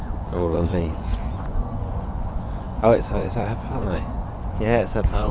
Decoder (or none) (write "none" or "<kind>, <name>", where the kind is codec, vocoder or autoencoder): vocoder, Vocos